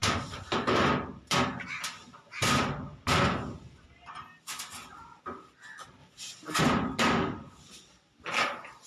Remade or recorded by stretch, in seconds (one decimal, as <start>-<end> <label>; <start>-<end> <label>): 0.0-6.0 recorded; 6.0-6.6 remade; 6.6-8.9 recorded